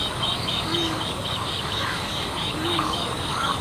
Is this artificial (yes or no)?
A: yes